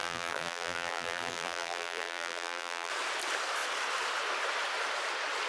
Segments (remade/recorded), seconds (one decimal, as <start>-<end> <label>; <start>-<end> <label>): 0.0-2.9 remade; 2.9-5.5 recorded